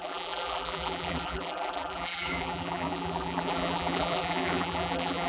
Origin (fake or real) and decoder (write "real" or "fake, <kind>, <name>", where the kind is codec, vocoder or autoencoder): fake, vocoder, BigVGAN v2